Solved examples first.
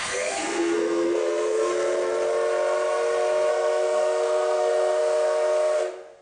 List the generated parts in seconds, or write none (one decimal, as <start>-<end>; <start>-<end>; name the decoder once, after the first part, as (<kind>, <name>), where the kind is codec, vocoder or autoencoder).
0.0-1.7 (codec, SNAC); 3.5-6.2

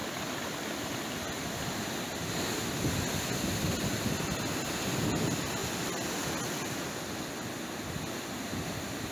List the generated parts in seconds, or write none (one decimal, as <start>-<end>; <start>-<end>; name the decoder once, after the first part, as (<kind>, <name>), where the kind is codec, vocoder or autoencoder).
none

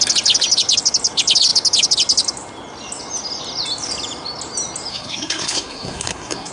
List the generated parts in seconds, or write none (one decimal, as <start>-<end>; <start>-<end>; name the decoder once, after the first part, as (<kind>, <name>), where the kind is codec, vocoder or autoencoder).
4.9-6.5 (codec, SNAC)